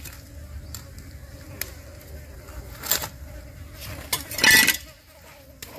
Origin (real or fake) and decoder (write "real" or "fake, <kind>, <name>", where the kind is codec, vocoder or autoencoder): real